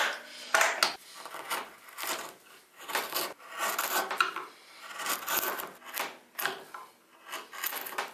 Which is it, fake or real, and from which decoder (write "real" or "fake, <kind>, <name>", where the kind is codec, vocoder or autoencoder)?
real